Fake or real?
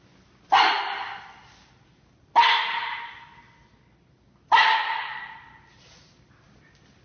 real